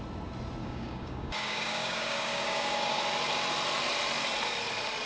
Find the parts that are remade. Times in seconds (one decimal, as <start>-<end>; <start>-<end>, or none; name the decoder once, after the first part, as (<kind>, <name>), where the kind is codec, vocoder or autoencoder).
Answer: 0.6-3.0 (codec, DAC)